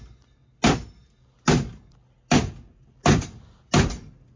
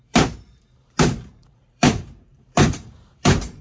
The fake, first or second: second